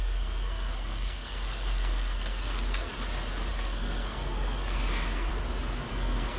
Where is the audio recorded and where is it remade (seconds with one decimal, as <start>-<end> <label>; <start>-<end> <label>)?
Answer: 0.0-2.9 remade; 2.9-3.5 recorded; 3.5-5.3 remade; 5.3-5.9 recorded; 5.9-6.4 remade